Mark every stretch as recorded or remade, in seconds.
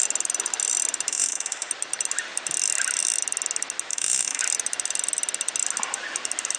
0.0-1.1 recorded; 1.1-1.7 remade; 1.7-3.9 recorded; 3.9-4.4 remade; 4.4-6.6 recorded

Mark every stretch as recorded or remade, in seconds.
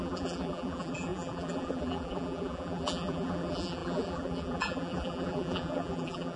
0.0-6.4 remade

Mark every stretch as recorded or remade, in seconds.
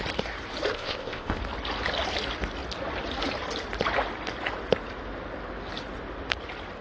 0.0-0.7 recorded; 0.7-1.4 remade; 1.4-6.8 recorded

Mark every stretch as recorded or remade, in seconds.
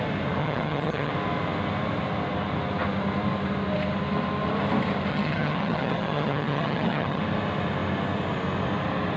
0.0-0.4 recorded; 0.4-1.1 remade; 1.1-5.1 recorded; 5.1-7.2 remade; 7.2-9.2 recorded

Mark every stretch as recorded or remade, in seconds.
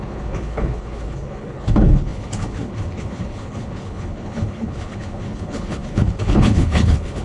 0.0-7.2 remade